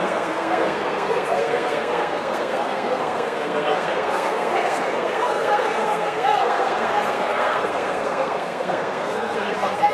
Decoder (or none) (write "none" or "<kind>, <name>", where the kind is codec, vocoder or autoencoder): codec, SNAC